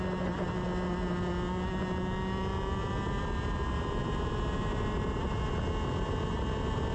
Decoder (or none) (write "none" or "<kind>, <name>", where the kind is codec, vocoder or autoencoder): none